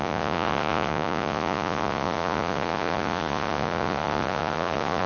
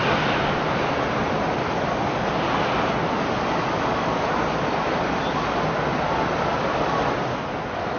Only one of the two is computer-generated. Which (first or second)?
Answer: first